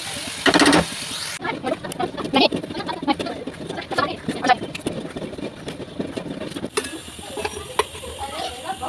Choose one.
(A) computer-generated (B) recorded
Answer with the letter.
B